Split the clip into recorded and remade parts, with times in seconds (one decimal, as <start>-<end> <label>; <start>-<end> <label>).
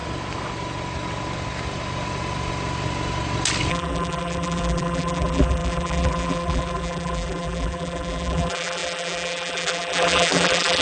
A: 0.0-3.7 recorded; 3.7-10.8 remade